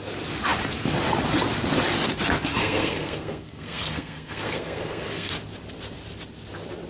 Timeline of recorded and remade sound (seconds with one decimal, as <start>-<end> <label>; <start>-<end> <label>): 0.0-2.6 recorded; 2.6-5.3 remade; 5.3-6.9 recorded